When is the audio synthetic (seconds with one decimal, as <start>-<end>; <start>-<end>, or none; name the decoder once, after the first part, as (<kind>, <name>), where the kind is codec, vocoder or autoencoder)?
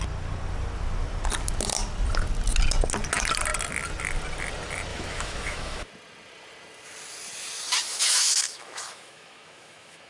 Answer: 4.9-5.9 (autoencoder, DAC-VAE); 7.9-10.1